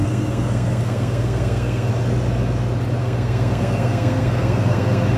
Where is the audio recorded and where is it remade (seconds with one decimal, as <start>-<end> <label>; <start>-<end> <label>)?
0.0-1.9 remade; 1.9-3.0 recorded; 3.0-5.2 remade